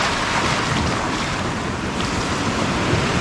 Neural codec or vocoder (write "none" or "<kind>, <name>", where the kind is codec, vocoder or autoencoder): none